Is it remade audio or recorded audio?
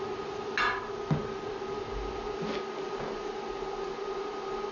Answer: recorded